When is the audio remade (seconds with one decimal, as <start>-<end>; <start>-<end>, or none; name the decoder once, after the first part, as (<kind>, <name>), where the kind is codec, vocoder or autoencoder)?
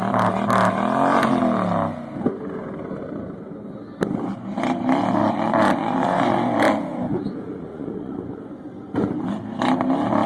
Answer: 5.2-8.4 (vocoder, Vocos)